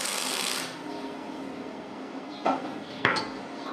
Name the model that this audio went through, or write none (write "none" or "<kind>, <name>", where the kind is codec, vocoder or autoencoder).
codec, SNAC